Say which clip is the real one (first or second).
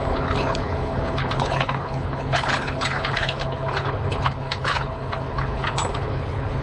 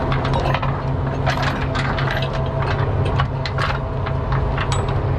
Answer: second